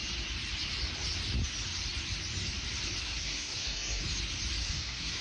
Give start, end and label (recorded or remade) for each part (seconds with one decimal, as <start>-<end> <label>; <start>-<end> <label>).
0.0-3.0 recorded; 3.0-4.0 remade; 4.0-4.6 recorded; 4.6-5.2 remade